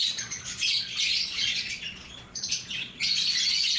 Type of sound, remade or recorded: remade